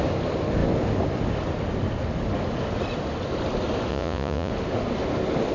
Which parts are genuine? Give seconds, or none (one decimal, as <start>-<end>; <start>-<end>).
0.0-3.9; 4.5-5.5